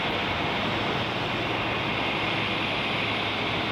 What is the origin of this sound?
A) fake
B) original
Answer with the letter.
B